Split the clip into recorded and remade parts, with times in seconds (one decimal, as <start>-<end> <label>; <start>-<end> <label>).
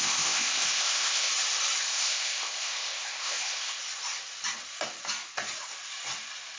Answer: 0.0-1.3 remade; 1.3-1.8 recorded; 1.8-3.8 remade; 3.8-6.6 recorded